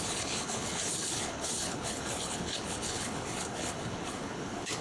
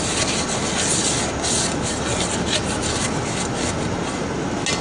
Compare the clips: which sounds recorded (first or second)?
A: second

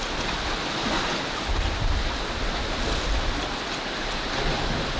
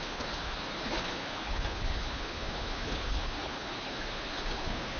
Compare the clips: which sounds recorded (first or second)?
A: first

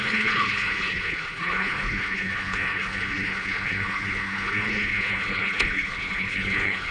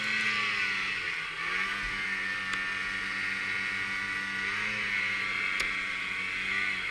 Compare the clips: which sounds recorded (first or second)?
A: second